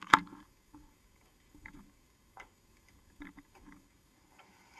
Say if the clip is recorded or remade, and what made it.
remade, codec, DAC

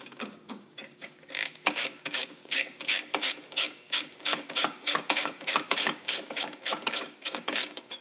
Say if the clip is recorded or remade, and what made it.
remade, codec, DAC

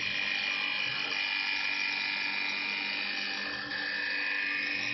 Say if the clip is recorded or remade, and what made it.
recorded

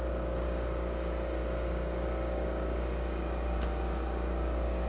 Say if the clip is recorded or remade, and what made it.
remade, codec, DAC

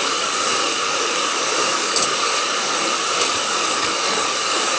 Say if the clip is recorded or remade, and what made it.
remade, codec, DAC